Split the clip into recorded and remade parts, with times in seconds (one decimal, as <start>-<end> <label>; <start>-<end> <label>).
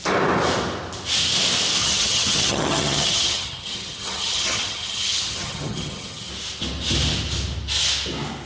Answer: 0.0-1.8 recorded; 1.8-6.3 remade; 6.3-8.5 recorded